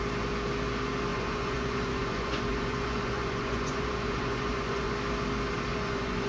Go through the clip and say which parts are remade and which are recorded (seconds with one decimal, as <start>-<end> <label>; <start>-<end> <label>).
0.0-1.1 recorded; 1.1-4.9 remade; 4.9-5.7 recorded; 5.7-6.3 remade